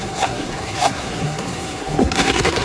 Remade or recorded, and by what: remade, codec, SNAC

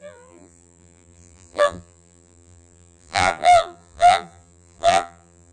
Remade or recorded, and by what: remade, vocoder, BigVGAN v2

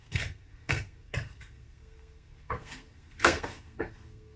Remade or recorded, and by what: remade, codec, SNAC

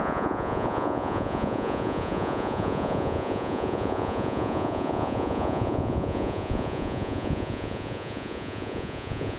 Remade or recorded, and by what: remade, vocoder, Vocos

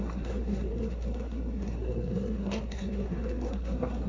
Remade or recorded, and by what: remade, codec, SNAC